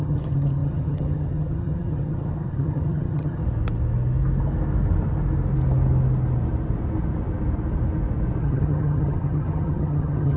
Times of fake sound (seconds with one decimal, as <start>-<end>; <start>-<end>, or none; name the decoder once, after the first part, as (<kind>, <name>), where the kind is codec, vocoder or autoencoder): 0.0-3.4 (vocoder, HiFi-GAN); 8.4-10.4